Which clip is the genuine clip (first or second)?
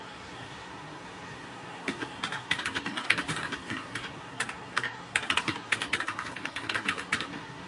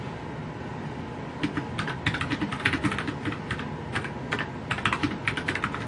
second